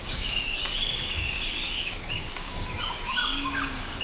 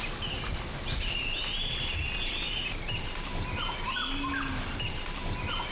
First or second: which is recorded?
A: second